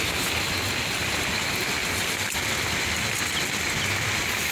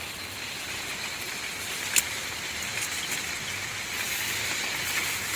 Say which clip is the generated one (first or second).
second